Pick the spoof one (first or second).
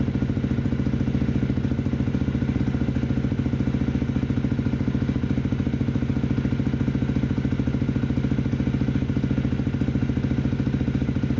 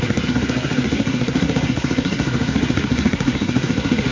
second